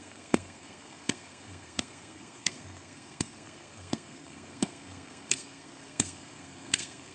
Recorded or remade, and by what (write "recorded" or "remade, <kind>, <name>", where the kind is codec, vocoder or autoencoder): remade, codec, SNAC